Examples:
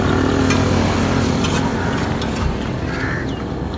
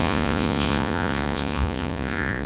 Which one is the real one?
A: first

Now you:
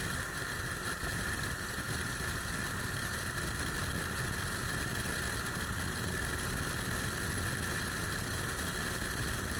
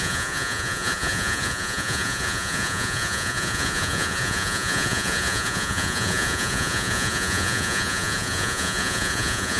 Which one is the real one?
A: first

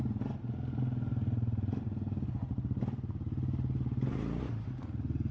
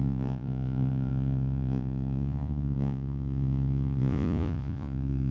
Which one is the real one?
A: first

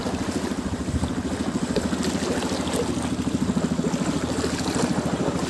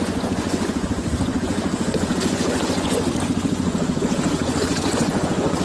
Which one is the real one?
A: first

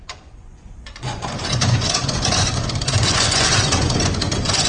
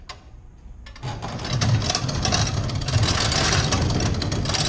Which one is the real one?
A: second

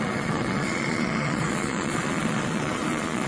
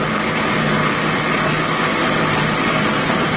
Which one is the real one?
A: second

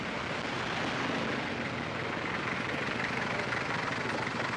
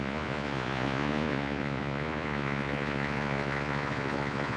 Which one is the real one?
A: first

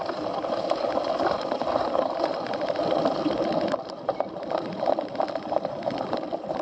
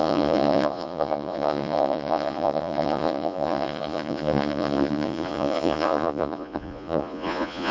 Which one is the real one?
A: first